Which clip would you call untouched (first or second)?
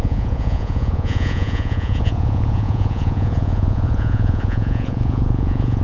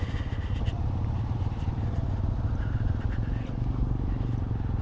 second